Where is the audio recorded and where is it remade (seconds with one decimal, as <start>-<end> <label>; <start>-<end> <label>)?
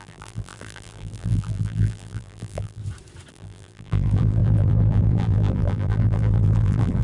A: 0.0-2.8 remade; 2.8-3.3 recorded; 3.3-7.0 remade